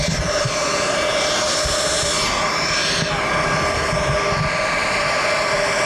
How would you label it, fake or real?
real